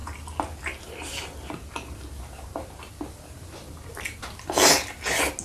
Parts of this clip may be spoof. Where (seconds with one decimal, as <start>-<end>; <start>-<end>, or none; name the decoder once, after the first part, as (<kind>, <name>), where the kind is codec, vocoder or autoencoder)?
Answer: none